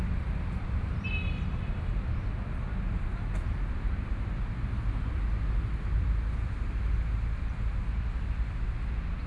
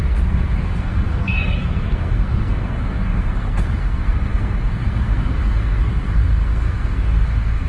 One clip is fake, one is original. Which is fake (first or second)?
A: second